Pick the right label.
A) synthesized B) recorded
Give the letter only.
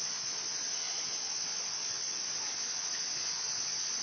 A